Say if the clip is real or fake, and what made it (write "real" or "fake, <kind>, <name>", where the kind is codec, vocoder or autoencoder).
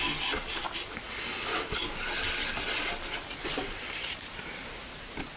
real